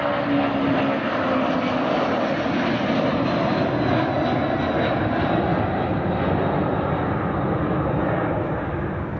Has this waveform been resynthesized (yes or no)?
no